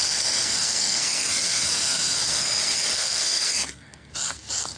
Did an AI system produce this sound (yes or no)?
yes